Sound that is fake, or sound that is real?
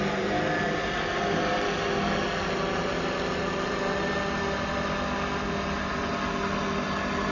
real